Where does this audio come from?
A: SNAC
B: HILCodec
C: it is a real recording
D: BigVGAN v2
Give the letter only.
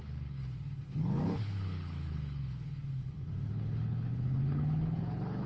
B